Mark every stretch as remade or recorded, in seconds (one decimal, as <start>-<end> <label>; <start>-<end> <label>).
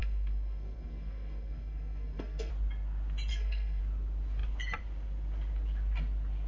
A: 0.0-2.5 remade; 2.5-3.3 recorded; 3.3-3.8 remade; 3.8-6.5 recorded